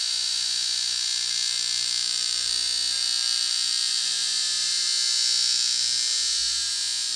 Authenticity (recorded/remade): remade